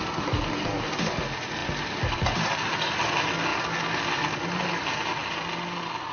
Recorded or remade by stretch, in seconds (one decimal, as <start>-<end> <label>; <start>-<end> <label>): 0.0-6.1 recorded